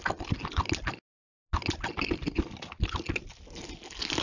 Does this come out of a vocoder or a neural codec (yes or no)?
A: no